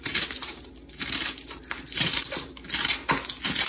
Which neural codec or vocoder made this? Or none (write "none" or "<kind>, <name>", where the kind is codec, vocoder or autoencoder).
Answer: none